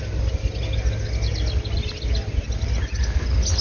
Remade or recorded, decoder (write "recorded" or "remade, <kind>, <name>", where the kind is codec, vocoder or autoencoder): recorded